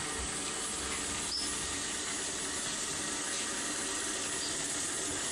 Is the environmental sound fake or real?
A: real